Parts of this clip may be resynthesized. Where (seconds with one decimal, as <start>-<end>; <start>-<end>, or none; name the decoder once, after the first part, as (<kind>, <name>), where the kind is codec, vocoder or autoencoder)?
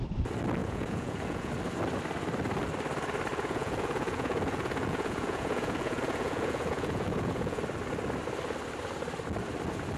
0.6-1.5 (vocoder, Vocos); 3.3-7.6